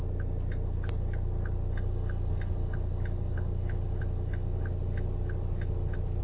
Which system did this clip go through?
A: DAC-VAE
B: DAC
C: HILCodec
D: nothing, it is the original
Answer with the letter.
D